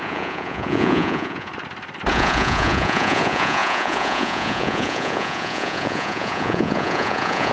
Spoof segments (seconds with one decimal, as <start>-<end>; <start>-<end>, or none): 0.0-1.5; 2.1-7.5